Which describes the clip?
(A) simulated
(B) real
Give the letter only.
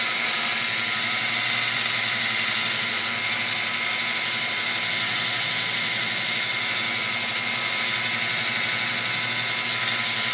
B